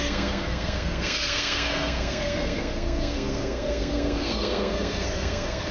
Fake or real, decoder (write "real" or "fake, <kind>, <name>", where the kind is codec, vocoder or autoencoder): fake, codec, SNAC